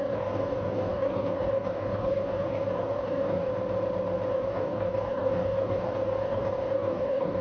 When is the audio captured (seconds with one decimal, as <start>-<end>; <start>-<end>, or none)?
3.5-4.3